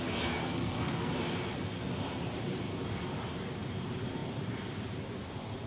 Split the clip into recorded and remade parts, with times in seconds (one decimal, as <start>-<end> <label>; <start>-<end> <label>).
0.0-0.4 recorded; 0.4-1.1 remade; 1.1-5.7 recorded